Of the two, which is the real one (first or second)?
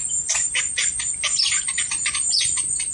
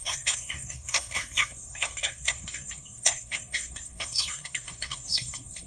first